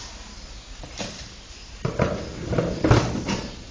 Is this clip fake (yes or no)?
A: yes